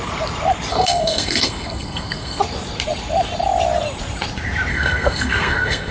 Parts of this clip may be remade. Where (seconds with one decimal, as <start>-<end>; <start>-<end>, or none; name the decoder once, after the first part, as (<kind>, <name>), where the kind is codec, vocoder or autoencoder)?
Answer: 0.7-2.4 (codec, SNAC); 4.7-5.9